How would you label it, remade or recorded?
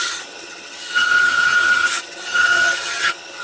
remade